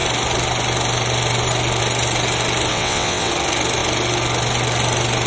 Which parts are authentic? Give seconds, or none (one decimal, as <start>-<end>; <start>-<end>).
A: 0.0-2.7; 3.3-5.3